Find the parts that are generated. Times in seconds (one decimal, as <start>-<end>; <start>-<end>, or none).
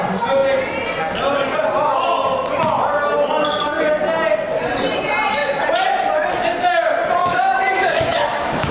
7.2-8.7